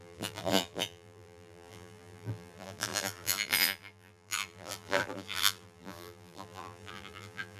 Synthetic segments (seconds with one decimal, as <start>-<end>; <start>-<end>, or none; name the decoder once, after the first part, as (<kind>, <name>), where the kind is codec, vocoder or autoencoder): 0.0-7.6 (vocoder, BigVGAN v2)